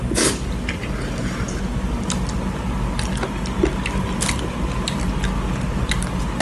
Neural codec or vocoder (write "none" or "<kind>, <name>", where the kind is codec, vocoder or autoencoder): none